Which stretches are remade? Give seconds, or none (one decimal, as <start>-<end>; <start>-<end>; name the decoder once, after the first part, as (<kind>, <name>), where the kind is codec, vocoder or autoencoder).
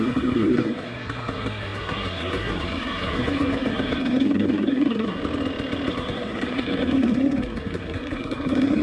0.0-5.2 (codec, SNAC); 5.9-8.8